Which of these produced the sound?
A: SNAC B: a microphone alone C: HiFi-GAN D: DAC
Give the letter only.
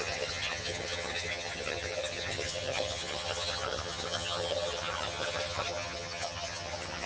C